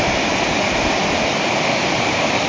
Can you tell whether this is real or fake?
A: real